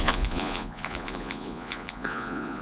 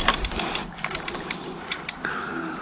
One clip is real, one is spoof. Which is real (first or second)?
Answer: second